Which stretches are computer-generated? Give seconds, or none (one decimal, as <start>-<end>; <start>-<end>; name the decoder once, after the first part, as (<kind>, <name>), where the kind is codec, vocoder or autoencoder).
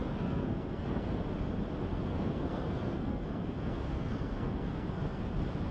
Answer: 0.0-1.2 (codec, SNAC); 1.9-5.3